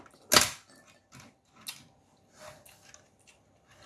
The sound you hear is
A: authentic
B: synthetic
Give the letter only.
A